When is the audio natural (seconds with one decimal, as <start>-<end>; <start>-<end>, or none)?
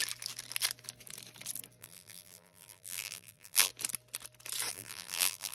0.0-1.8; 3.7-4.7